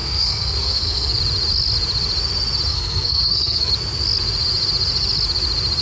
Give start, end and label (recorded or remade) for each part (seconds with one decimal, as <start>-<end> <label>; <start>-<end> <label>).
0.0-1.2 remade; 1.2-2.7 recorded; 2.7-3.7 remade; 3.7-5.8 recorded